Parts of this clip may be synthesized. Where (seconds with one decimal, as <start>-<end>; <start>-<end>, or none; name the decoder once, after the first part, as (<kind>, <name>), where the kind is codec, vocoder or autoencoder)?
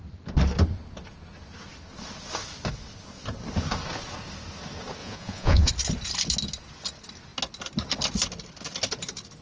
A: 5.0-5.7 (vocoder, Vocos)